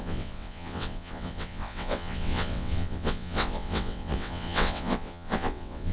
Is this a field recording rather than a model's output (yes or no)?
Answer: no